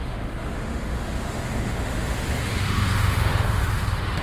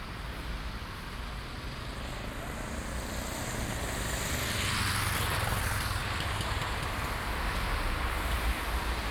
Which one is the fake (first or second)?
first